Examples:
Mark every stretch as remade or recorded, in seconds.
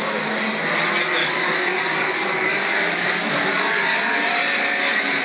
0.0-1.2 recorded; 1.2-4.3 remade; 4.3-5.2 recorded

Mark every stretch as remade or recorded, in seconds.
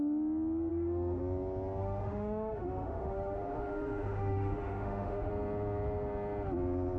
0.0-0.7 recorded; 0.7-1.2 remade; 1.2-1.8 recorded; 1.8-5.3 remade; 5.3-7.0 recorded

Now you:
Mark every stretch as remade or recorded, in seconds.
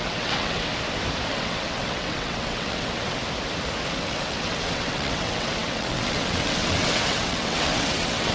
0.0-0.7 remade; 0.7-1.3 recorded; 1.3-3.2 remade; 3.2-3.9 recorded; 3.9-8.3 remade